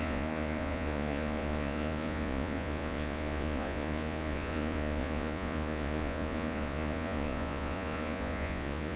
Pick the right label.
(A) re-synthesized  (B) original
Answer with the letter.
A